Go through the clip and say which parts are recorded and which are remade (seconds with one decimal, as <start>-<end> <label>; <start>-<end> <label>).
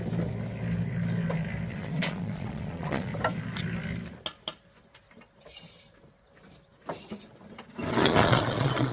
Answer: 0.0-1.7 recorded; 1.7-3.1 remade; 3.1-7.9 recorded; 7.9-8.9 remade